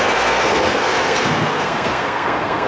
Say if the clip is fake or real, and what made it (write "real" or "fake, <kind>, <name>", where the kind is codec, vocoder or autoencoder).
fake, codec, SNAC